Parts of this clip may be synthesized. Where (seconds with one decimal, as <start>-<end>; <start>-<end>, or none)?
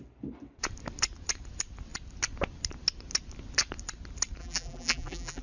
4.4-5.4